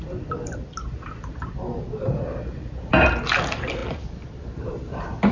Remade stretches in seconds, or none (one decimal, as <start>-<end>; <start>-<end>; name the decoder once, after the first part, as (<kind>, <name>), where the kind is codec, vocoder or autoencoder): none